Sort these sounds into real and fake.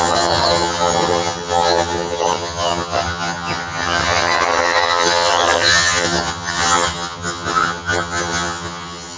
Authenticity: fake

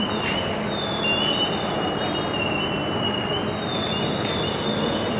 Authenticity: real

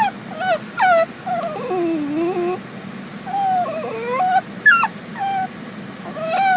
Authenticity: real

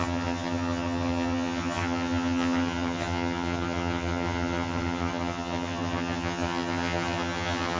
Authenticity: fake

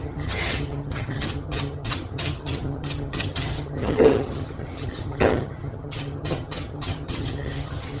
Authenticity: fake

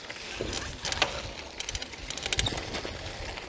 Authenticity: real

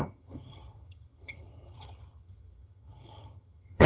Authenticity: fake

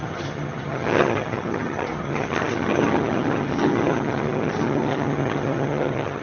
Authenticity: fake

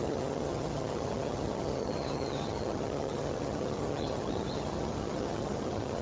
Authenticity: fake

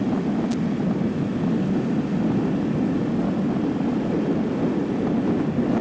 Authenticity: real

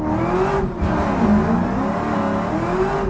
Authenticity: real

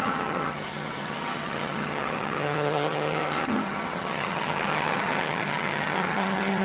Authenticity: fake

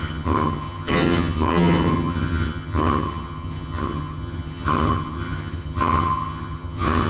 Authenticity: fake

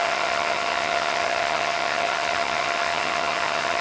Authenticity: fake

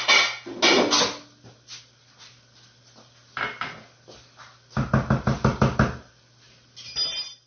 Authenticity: real